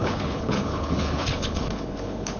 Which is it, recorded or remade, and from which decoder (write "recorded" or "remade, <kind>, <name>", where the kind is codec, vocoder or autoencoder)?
remade, codec, HILCodec